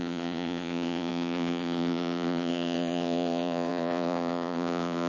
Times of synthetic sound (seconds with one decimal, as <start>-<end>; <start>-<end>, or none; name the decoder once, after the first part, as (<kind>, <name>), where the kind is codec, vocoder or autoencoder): 0.0-5.1 (vocoder, Vocos)